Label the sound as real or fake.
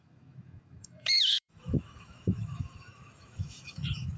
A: fake